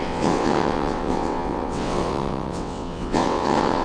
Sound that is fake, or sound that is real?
fake